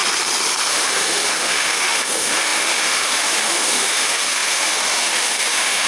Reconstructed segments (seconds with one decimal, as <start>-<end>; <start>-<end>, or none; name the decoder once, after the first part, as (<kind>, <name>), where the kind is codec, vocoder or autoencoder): 0.7-5.9 (autoencoder, DAC-VAE)